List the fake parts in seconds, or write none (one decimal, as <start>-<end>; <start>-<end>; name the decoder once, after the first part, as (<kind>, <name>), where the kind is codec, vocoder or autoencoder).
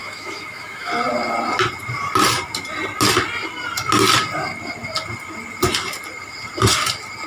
0.0-0.9 (autoencoder, DAC-VAE)